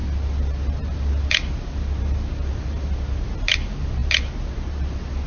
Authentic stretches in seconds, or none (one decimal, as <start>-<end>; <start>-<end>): 0.0-5.3